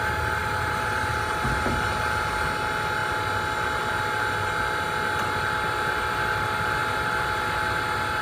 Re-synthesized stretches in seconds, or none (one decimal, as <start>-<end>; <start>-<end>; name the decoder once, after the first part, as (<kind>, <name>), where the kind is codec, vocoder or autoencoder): 0.4-1.7 (vocoder, BigVGAN v2)